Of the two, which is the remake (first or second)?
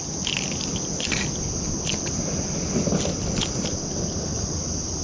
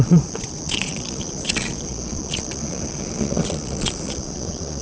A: second